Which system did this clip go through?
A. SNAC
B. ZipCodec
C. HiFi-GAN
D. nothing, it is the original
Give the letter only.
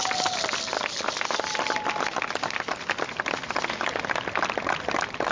D